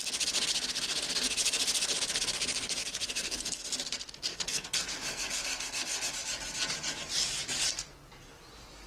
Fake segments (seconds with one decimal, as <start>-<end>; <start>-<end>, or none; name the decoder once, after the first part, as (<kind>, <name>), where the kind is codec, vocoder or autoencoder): 2.8-3.6 (codec, SNAC); 4.3-6.1